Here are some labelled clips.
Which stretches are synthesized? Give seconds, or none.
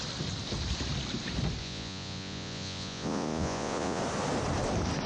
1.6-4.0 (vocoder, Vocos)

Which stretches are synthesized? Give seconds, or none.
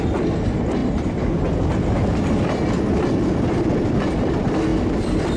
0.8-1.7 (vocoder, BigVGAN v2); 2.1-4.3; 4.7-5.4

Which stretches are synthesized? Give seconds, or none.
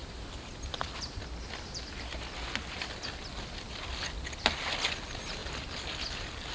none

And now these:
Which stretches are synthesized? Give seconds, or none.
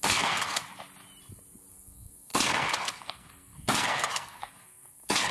0.0-0.6 (codec, SNAC); 1.7-5.3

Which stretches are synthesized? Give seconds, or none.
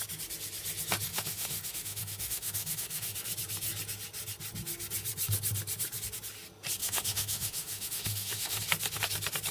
1.1-3.2 (autoencoder, DAC-VAE); 6.8-8.6